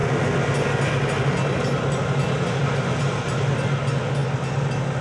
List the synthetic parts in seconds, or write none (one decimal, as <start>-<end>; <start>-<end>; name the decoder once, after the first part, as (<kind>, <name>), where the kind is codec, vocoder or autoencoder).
none